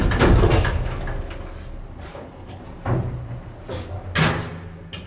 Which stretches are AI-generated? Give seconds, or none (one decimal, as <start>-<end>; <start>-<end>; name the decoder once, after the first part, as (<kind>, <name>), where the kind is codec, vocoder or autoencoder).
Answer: 2.1-2.6 (codec, HILCodec)